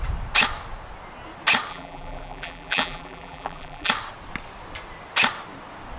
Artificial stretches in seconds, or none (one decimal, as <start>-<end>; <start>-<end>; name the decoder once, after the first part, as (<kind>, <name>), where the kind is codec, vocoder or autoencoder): 1.7-3.9 (vocoder, BigVGAN v2)